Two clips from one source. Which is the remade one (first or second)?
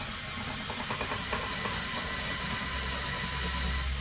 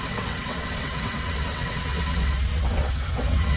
second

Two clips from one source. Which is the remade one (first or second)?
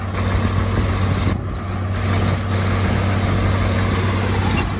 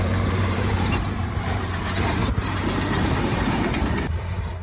second